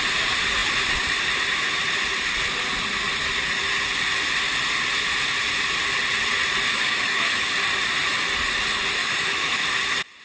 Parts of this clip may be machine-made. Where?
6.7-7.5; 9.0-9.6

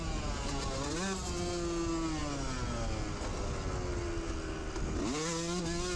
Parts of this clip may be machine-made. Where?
none